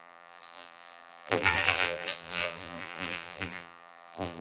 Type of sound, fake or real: fake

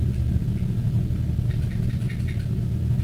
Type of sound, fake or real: real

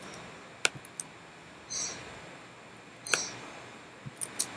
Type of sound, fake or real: real